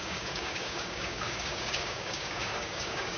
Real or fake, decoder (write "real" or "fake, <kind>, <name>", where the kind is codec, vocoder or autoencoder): fake, codec, DAC